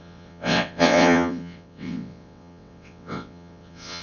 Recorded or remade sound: remade